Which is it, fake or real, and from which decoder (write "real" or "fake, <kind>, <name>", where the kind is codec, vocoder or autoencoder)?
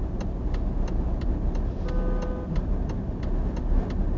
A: real